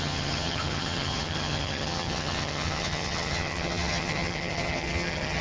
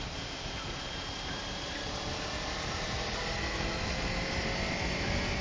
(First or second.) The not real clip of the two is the first